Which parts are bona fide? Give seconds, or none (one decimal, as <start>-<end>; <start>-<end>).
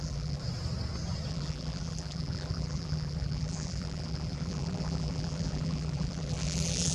0.4-1.3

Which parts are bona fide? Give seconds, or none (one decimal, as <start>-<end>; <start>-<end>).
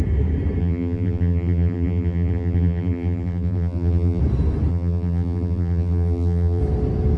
0.0-0.6; 4.2-4.7; 6.6-7.2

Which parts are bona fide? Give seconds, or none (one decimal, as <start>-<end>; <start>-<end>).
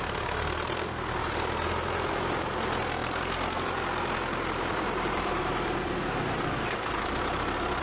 0.0-3.0